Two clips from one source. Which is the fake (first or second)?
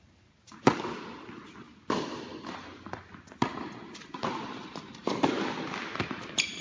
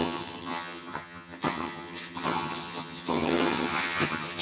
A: second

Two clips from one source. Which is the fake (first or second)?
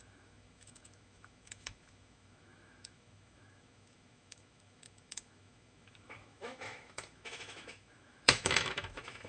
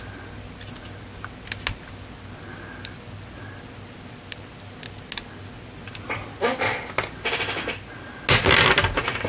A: first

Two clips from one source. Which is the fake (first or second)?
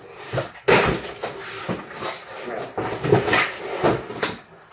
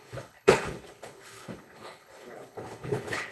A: second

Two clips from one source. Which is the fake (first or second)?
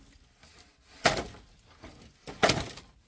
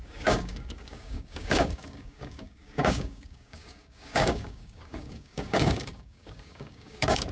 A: second